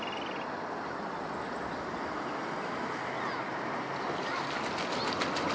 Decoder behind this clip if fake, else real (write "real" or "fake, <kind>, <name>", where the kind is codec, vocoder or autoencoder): real